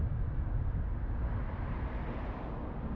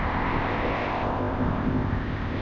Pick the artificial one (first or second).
second